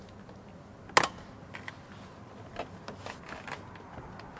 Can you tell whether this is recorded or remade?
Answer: recorded